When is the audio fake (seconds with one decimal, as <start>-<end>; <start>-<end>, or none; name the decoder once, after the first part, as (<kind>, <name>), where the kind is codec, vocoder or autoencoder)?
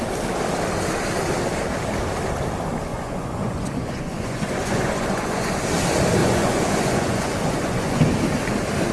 2.9-5.5 (vocoder, Vocos); 6.2-8.0